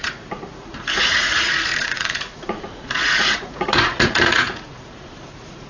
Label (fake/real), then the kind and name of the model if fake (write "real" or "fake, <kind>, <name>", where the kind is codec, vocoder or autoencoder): fake, vocoder, Vocos